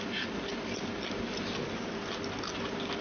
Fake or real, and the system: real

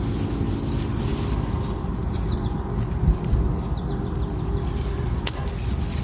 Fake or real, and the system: real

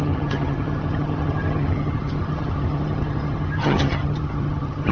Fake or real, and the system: fake, vocoder, HiFi-GAN